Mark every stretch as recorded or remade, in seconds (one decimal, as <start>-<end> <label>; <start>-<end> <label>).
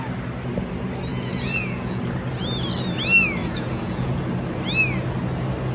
0.0-1.1 recorded; 1.1-2.0 remade; 2.0-3.4 recorded; 3.4-4.2 remade; 4.2-5.7 recorded